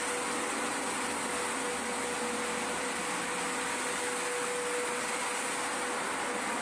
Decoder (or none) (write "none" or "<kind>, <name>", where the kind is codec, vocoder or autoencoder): none